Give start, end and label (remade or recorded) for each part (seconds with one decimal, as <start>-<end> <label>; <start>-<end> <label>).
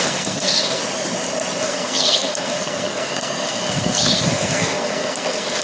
0.0-0.8 remade; 0.8-1.6 recorded; 1.6-5.6 remade